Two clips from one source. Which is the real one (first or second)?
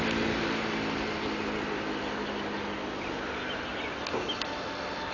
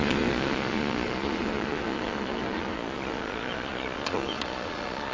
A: first